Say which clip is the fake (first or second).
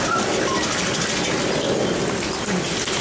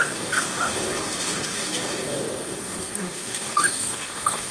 second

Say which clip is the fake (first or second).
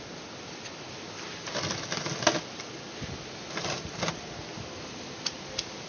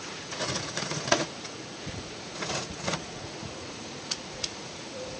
second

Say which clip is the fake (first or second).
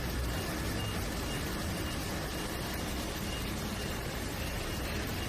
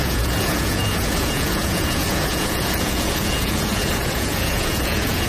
second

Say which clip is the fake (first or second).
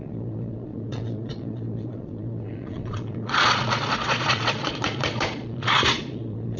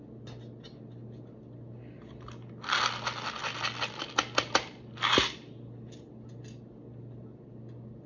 first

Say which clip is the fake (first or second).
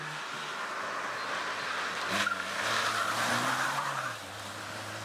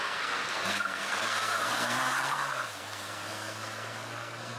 second